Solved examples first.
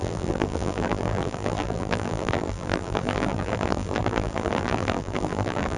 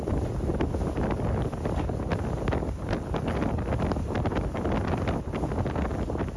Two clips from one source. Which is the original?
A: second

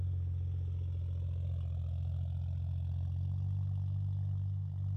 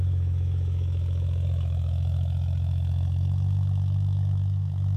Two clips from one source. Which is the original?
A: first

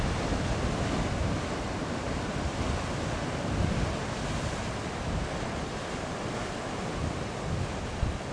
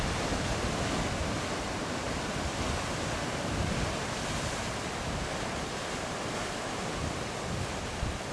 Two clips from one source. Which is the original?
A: first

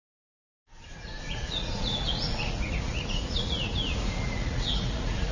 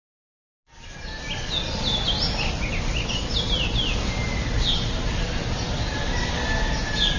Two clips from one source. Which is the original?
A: second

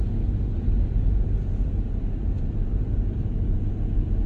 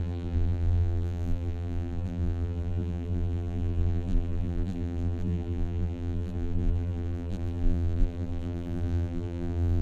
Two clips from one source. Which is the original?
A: first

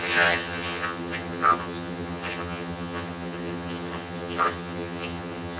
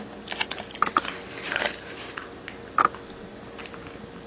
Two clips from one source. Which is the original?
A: second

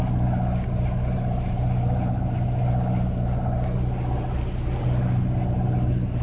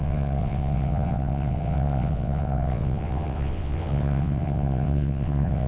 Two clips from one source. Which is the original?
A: first